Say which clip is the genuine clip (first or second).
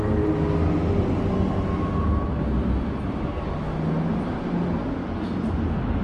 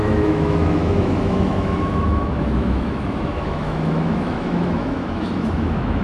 first